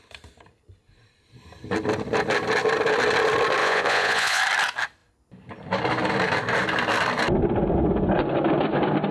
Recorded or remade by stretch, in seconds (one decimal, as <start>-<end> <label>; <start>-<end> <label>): 0.0-3.6 recorded; 3.6-4.4 remade; 4.4-9.1 recorded